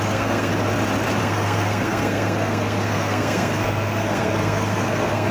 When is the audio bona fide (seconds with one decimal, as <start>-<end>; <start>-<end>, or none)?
0.5-1.2